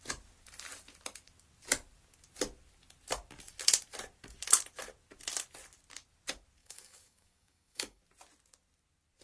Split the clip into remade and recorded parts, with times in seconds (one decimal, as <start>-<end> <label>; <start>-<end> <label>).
0.0-6.6 recorded; 6.6-8.0 remade; 8.0-9.2 recorded